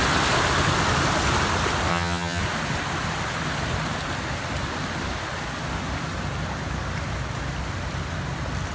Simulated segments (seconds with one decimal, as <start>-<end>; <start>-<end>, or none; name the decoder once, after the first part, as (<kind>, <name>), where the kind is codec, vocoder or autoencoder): 1.9-2.4 (vocoder, HiFi-GAN)